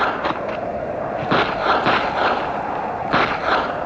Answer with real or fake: real